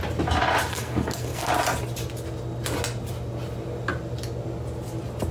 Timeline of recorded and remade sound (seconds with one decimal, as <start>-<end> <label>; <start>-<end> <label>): 0.0-0.7 recorded; 0.7-1.5 remade; 1.5-5.3 recorded